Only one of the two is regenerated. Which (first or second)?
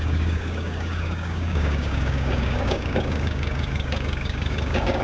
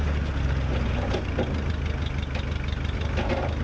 first